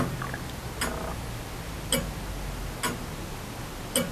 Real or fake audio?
real